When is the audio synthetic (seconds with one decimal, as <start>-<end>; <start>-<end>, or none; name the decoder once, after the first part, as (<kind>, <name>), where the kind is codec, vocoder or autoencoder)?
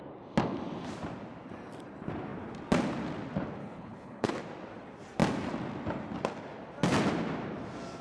3.6-4.3 (codec, HILCodec)